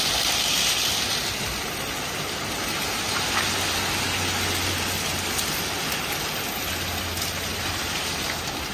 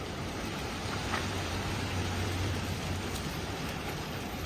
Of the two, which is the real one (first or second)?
first